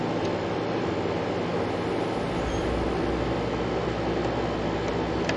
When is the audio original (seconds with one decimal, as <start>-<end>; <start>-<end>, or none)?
0.0-5.4